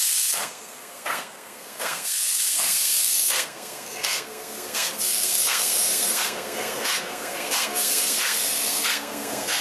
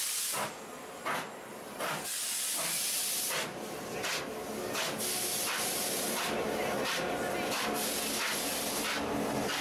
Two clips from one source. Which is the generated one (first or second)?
first